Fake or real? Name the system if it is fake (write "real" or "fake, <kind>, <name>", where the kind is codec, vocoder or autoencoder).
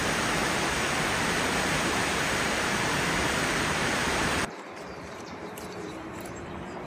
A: fake, vocoder, BigVGAN v2